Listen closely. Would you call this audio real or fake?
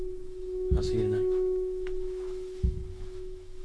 fake